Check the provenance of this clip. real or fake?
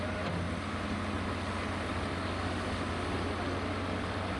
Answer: real